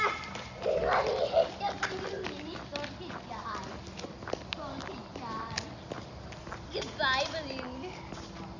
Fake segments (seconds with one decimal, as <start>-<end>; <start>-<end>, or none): none